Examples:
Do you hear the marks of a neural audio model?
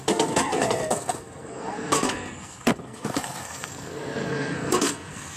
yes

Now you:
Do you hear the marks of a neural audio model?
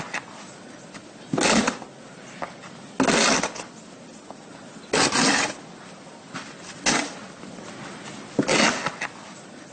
no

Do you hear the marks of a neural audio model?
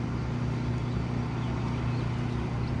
no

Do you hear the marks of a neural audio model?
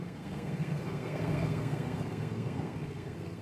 yes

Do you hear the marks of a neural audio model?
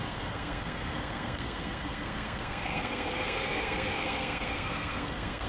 yes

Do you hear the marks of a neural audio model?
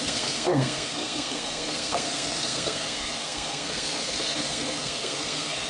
yes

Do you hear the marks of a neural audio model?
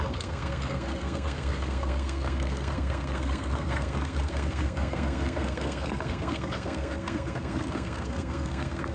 yes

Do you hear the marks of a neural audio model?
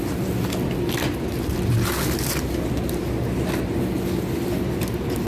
no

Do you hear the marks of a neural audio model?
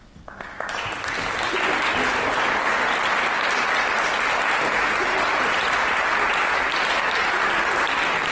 no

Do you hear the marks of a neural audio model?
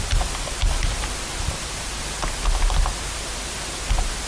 no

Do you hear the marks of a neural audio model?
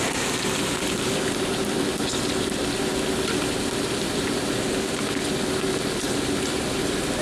no